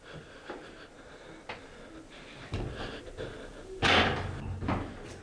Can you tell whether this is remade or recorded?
recorded